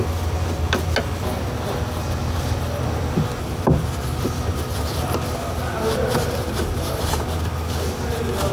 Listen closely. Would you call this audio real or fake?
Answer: real